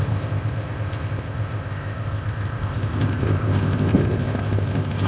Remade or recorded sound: remade